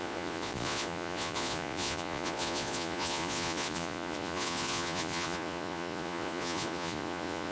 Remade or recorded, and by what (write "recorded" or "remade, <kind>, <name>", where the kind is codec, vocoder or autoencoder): remade, vocoder, Vocos